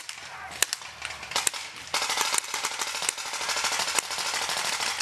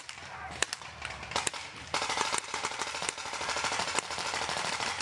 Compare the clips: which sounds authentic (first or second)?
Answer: first